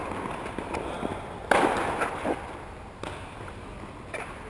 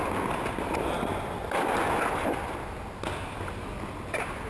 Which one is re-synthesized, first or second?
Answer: first